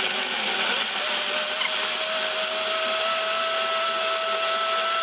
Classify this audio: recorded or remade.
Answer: recorded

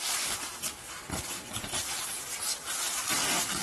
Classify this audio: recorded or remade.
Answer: recorded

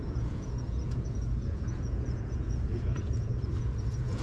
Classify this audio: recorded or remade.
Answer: remade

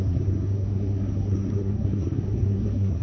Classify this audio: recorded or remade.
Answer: remade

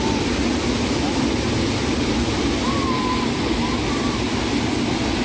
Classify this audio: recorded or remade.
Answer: recorded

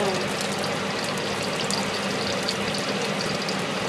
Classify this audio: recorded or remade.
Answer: recorded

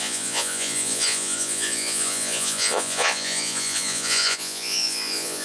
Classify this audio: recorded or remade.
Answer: remade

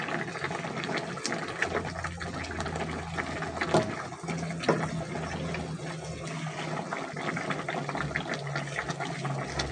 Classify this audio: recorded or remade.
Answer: recorded